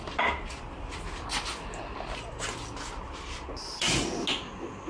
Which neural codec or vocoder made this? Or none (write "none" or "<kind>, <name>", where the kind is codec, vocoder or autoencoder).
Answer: none